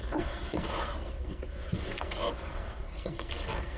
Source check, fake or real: fake